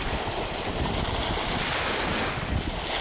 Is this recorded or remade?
recorded